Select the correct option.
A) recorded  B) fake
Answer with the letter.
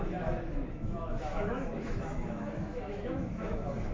B